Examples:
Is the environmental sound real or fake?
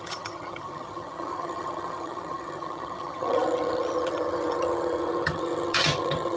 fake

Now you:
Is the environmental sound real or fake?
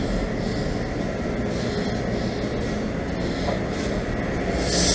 real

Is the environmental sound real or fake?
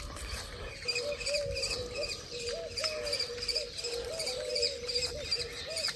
fake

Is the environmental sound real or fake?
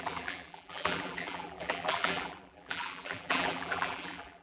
fake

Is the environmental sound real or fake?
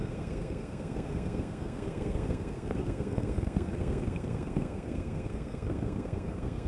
fake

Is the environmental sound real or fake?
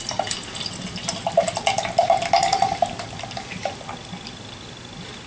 real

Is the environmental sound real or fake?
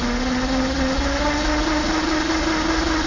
real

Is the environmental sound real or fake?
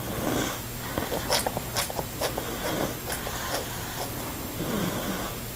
real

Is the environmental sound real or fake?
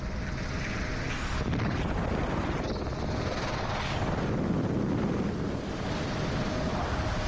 real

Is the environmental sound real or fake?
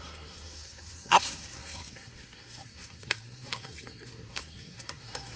fake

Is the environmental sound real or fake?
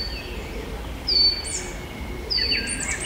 real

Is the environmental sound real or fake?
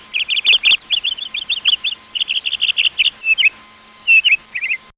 real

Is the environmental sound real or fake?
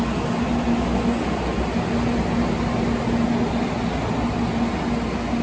real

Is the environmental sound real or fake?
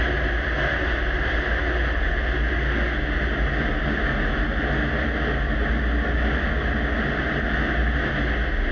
real